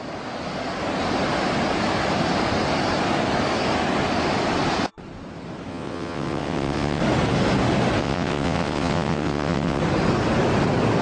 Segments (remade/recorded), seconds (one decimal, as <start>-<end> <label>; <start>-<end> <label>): 0.0-5.7 recorded; 5.7-7.0 remade; 7.0-8.0 recorded; 8.0-9.8 remade; 9.8-11.0 recorded